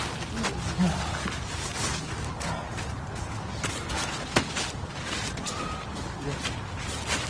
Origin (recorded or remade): recorded